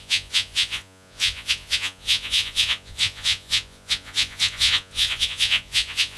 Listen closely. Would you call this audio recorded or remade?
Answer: remade